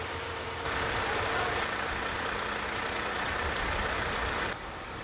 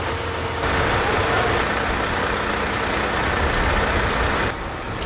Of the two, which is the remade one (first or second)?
first